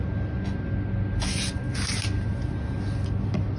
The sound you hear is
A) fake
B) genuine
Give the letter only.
B